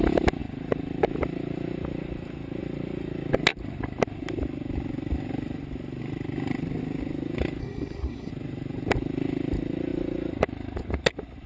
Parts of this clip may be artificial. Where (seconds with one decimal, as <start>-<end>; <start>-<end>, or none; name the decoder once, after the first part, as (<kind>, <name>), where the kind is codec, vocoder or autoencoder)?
7.6-8.3 (codec, SNAC)